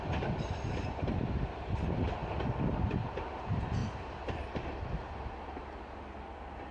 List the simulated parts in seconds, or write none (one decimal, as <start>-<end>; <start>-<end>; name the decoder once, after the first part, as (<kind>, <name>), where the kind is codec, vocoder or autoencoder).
3.8-5.6 (vocoder, BigVGAN v2)